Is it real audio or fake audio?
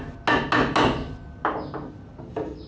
real